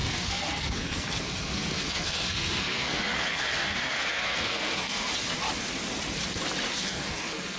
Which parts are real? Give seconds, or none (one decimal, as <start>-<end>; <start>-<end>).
5.1-6.7